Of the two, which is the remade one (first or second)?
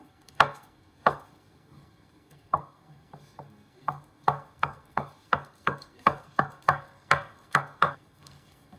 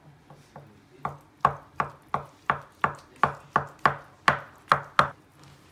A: first